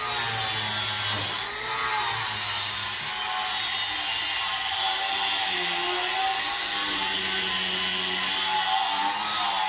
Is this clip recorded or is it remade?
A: recorded